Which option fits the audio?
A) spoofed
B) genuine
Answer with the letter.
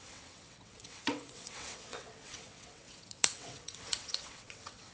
A